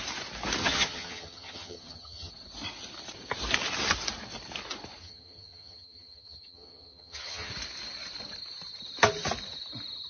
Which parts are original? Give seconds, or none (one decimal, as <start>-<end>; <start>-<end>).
0.0-0.6; 2.3-5.0; 7.5-10.1